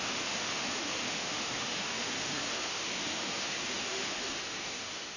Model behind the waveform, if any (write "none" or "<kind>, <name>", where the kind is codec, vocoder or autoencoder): autoencoder, DAC-VAE